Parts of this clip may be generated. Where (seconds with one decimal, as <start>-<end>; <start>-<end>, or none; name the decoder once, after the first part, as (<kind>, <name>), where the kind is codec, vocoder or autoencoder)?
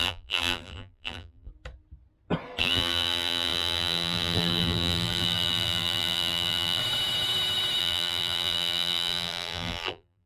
0.0-1.5 (vocoder, BigVGAN v2); 2.6-6.8; 7.8-10.3